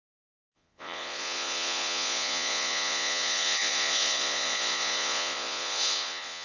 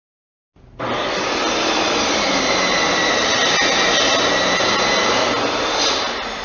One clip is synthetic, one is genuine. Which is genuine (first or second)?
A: second